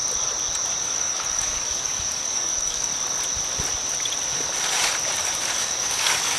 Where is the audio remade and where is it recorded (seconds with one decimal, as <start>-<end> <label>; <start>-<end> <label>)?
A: 0.0-0.8 recorded; 0.8-2.9 remade; 2.9-5.2 recorded; 5.2-6.4 remade